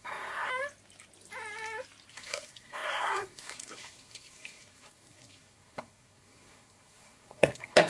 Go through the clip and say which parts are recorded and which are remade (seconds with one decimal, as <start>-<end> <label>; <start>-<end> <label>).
0.0-0.5 remade; 0.5-2.1 recorded; 2.1-7.9 remade